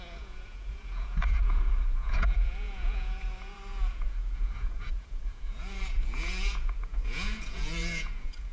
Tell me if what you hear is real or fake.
fake